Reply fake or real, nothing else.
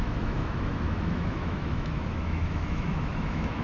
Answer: fake